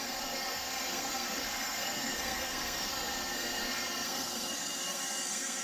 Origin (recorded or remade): remade